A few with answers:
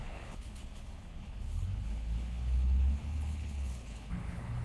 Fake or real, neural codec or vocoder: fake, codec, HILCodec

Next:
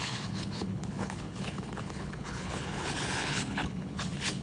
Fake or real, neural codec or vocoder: fake, codec, HILCodec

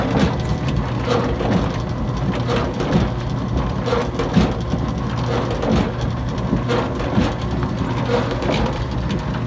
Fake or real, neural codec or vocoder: real